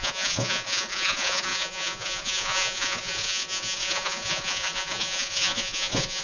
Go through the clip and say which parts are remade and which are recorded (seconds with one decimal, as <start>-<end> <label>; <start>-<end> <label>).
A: 0.0-6.2 remade